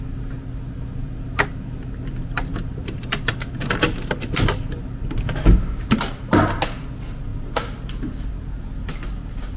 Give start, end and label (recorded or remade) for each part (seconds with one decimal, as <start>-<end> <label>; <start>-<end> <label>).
0.0-9.6 recorded